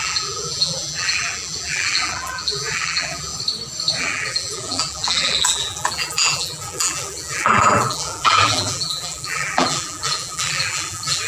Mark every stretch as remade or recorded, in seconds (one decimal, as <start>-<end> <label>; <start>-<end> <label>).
0.0-3.3 remade; 3.3-4.0 recorded; 4.0-11.3 remade